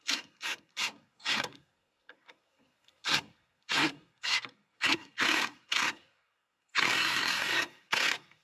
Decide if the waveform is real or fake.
fake